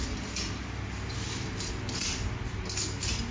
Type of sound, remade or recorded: recorded